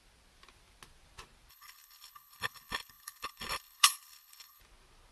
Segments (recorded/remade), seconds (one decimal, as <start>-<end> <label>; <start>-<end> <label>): 0.0-1.5 recorded; 1.5-4.6 remade; 4.6-5.1 recorded